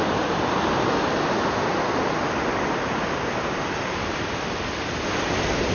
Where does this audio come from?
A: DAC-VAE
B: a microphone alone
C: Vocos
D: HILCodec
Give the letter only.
B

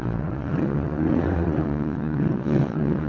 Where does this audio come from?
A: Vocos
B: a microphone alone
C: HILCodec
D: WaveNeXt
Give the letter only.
D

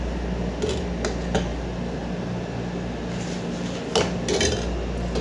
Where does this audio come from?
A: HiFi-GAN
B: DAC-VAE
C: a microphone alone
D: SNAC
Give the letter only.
C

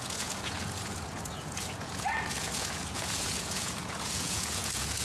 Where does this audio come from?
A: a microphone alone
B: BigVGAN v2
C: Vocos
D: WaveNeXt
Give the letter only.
C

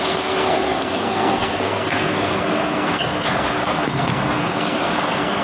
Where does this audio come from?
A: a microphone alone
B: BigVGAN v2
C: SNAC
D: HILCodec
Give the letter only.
C